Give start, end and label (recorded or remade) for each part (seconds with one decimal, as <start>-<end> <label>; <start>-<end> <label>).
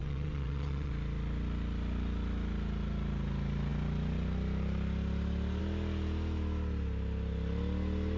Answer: 0.0-0.9 remade; 0.9-8.2 recorded